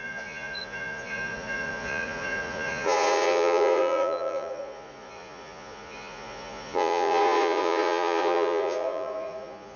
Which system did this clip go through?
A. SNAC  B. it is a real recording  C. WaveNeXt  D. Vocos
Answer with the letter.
D